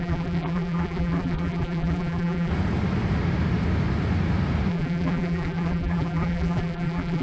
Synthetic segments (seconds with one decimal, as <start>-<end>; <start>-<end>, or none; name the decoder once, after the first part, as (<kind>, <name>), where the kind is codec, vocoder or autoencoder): 0.0-2.5 (vocoder, BigVGAN v2); 4.7-7.2